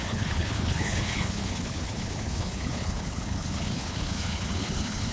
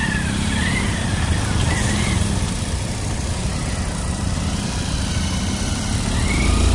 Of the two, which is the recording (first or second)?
second